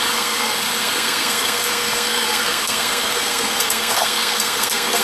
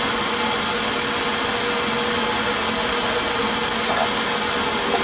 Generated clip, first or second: first